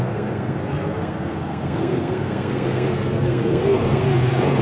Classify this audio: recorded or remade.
remade